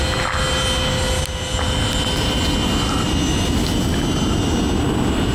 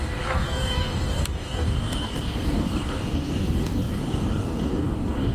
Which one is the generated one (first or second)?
second